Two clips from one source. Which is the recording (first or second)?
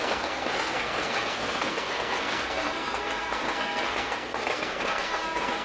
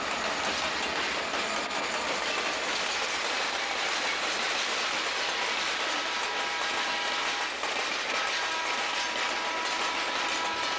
second